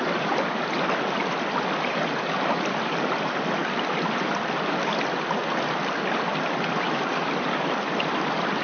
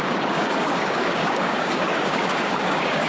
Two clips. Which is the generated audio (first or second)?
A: second